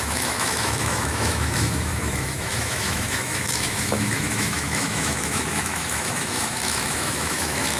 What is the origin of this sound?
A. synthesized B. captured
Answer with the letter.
A